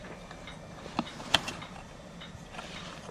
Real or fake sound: fake